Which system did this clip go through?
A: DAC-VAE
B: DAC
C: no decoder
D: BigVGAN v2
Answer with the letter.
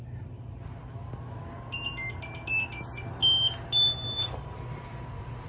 C